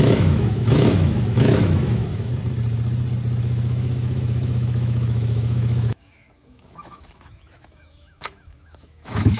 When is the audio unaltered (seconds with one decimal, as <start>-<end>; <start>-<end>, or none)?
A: 2.3-3.4